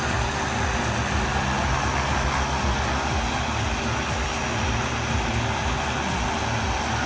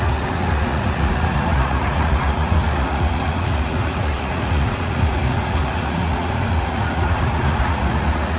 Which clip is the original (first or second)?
first